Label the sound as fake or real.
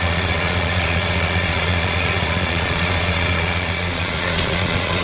fake